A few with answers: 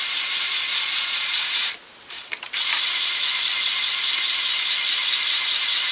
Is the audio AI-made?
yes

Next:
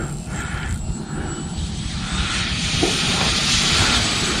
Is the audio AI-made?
no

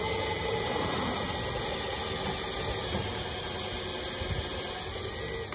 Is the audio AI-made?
no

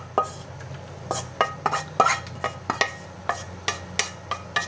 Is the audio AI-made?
no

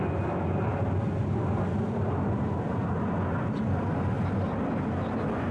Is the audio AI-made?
no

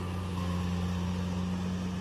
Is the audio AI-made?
no